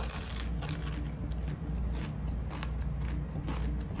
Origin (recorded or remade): recorded